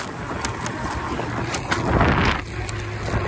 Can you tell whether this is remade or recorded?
recorded